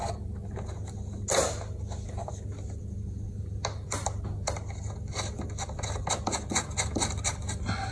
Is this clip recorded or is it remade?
recorded